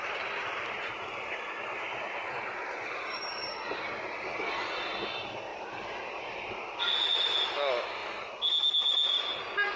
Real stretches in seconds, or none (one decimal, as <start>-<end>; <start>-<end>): 0.0-9.8